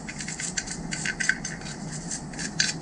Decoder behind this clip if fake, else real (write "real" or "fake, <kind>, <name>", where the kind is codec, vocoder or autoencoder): real